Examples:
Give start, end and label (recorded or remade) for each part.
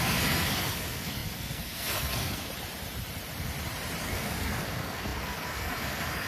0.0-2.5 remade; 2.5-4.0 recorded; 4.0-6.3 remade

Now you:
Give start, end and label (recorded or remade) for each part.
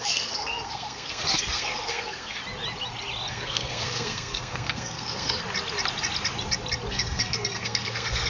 0.0-2.4 remade; 2.4-3.3 recorded; 3.3-5.4 remade; 5.4-6.9 recorded; 6.9-8.3 remade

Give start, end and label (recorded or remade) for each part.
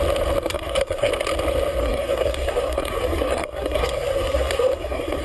0.0-0.5 recorded; 0.5-1.1 remade; 1.1-1.8 recorded; 1.8-5.2 remade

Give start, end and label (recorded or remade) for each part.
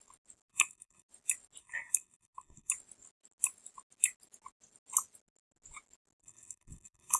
0.0-0.5 recorded; 0.5-1.1 remade; 1.1-1.6 recorded; 1.6-2.7 remade; 2.7-6.2 recorded; 6.2-7.2 remade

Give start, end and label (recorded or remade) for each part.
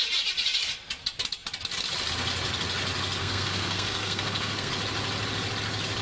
0.0-3.2 recorded; 3.2-4.7 remade; 4.7-6.0 recorded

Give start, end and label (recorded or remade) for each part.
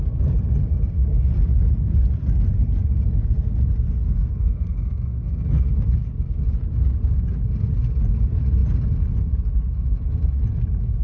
0.0-4.0 recorded; 4.0-5.4 remade; 5.4-11.0 recorded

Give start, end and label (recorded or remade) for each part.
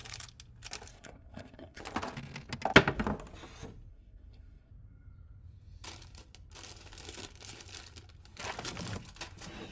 0.0-0.9 recorded; 0.9-1.8 remade; 1.8-3.9 recorded; 3.9-4.7 remade; 4.7-9.7 recorded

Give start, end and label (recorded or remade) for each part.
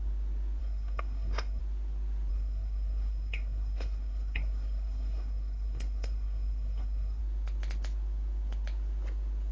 0.0-0.6 recorded; 0.6-1.6 remade; 1.6-2.3 recorded; 2.3-7.2 remade; 7.2-9.5 recorded